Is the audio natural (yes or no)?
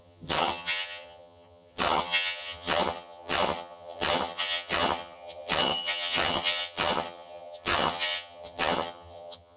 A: no